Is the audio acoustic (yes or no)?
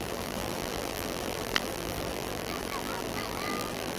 no